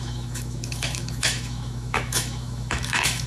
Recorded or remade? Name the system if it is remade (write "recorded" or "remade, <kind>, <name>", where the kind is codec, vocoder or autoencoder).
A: remade, autoencoder, DAC-VAE